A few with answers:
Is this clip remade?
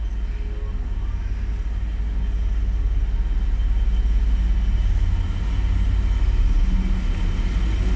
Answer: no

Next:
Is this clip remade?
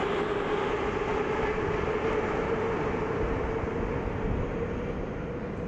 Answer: no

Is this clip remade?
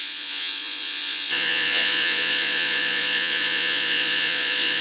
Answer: yes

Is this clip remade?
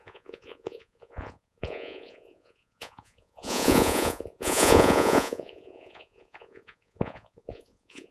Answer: yes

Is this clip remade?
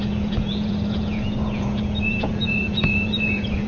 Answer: yes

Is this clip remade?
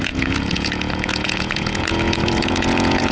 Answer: yes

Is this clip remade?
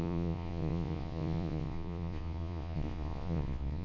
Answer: yes